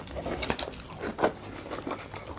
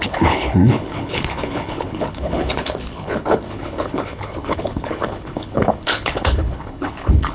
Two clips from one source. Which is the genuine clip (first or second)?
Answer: first